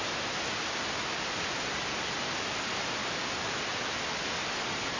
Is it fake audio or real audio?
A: real